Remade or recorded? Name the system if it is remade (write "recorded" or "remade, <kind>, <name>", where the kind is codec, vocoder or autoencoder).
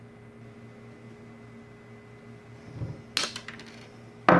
recorded